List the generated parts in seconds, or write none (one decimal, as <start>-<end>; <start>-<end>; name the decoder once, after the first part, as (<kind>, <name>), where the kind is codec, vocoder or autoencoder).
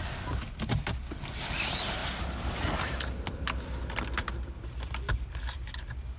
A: none